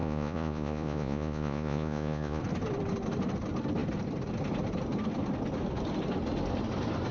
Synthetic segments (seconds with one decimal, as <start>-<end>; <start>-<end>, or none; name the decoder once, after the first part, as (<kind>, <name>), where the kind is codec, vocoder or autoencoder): 0.0-2.4 (vocoder, Vocos)

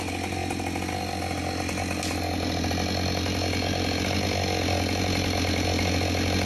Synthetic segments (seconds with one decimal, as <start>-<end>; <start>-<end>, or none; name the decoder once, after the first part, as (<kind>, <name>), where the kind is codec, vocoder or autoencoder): none

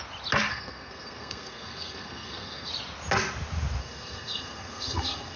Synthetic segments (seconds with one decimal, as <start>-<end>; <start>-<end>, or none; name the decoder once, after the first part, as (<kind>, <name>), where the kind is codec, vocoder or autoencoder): 0.5-2.7 (codec, SNAC); 3.8-5.4

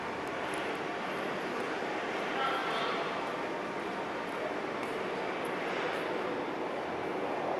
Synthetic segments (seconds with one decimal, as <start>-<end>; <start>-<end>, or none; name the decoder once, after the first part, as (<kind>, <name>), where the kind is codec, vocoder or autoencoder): none